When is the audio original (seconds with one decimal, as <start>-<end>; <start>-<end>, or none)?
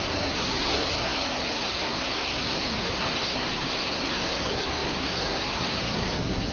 none